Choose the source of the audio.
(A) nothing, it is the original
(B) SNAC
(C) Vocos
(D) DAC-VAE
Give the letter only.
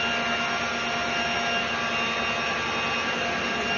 A